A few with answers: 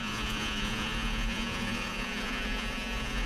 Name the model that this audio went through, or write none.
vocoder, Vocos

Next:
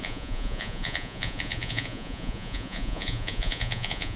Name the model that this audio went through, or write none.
vocoder, Vocos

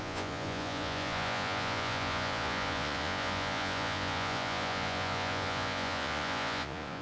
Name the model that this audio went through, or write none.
vocoder, Vocos